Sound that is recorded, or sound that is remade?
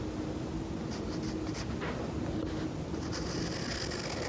recorded